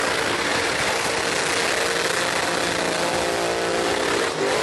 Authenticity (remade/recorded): recorded